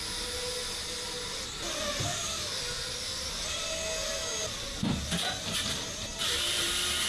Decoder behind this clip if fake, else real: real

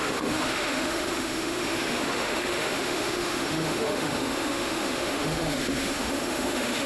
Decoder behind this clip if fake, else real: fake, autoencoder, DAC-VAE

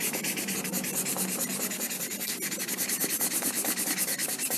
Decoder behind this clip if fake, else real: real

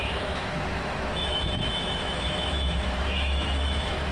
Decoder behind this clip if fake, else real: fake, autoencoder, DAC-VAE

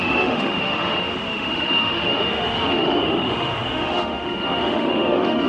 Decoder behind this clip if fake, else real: fake, autoencoder, DAC-VAE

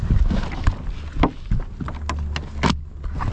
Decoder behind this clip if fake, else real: real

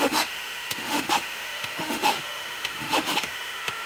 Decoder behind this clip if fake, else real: fake, autoencoder, DAC-VAE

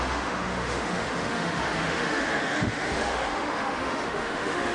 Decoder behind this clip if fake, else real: fake, autoencoder, DAC-VAE